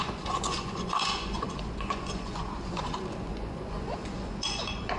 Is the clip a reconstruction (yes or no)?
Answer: yes